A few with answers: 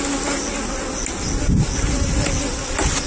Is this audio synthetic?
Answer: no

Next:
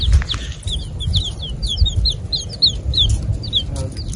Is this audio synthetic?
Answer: no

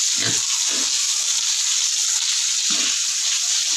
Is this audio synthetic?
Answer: no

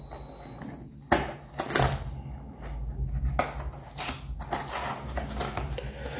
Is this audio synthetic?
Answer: no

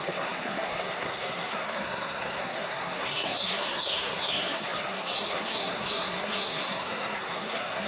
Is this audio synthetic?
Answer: yes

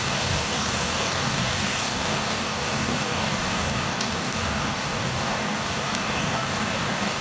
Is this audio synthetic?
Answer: yes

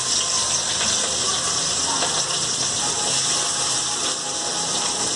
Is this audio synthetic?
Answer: no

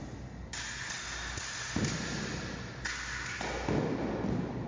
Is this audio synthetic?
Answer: no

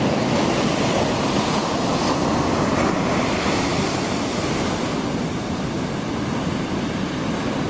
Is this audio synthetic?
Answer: no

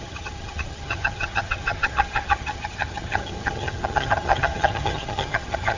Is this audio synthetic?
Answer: yes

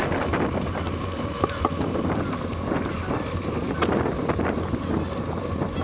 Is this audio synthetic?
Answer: no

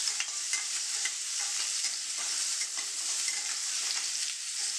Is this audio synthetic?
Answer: yes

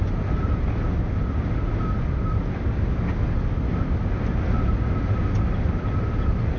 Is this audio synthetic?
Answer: no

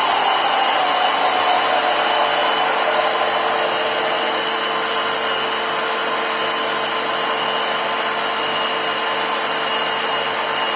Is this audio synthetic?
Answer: no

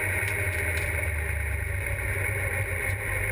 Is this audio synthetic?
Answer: no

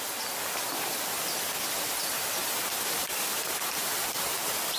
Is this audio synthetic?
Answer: no